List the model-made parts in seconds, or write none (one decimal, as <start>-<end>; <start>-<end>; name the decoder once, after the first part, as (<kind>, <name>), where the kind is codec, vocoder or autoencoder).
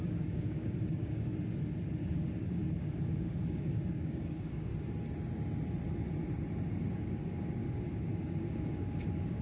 0.0-1.3 (codec, DAC); 2.0-4.7; 6.9-9.4